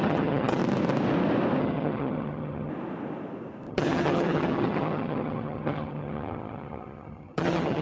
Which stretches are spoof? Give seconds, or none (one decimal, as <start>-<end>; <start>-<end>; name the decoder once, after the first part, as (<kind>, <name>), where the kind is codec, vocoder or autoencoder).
0.0-0.6 (vocoder, HiFi-GAN); 1.6-2.7; 3.7-7.8